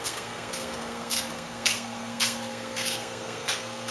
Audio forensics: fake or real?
fake